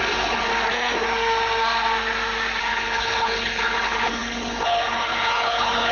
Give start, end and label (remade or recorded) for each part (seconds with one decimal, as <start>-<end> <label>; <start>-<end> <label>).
0.0-0.5 remade; 0.5-2.6 recorded; 2.6-5.9 remade